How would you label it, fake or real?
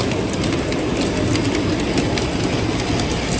real